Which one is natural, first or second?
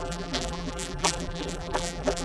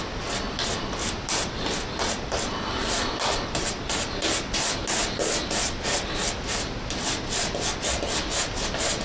second